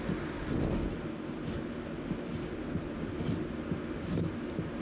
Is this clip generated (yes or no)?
no